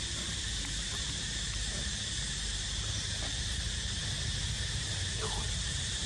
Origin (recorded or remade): remade